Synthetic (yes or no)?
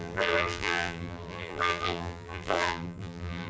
yes